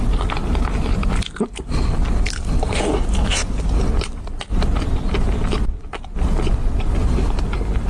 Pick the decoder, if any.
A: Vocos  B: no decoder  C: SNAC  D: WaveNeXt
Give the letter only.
B